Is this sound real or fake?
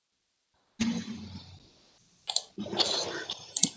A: real